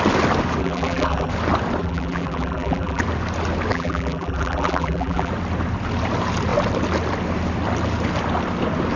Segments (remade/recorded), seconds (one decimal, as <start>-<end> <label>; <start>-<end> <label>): 0.0-0.6 recorded; 0.6-1.3 remade; 1.3-1.8 recorded; 1.8-3.0 remade; 3.0-3.7 recorded; 3.7-5.3 remade; 5.3-9.0 recorded